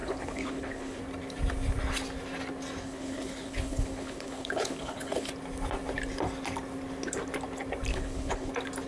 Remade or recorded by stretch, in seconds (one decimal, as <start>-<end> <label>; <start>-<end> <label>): 0.0-1.0 remade; 1.0-2.8 recorded; 2.8-5.3 remade; 5.3-7.9 recorded; 7.9-8.5 remade; 8.5-8.9 recorded